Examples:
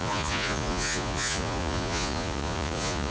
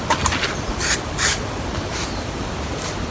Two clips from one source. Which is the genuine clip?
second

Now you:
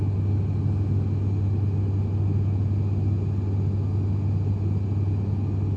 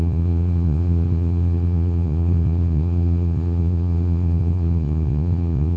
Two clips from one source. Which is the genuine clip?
first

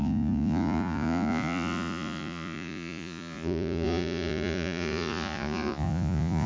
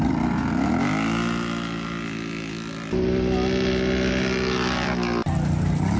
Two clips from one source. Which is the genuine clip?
second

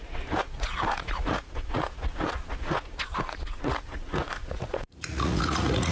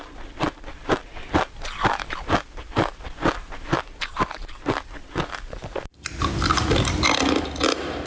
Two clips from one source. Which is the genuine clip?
second